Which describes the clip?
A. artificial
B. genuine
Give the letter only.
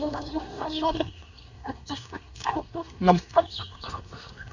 A